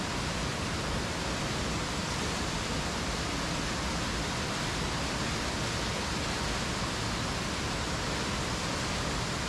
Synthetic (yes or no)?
no